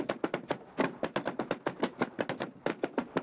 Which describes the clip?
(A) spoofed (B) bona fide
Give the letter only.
B